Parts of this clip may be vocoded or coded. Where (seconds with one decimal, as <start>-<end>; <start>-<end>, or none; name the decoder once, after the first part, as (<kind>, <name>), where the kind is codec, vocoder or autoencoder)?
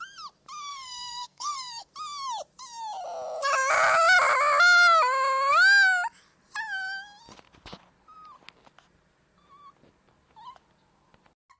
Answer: 0.7-1.9 (codec, SNAC)